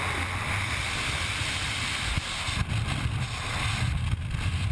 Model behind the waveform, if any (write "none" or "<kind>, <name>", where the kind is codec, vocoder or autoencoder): none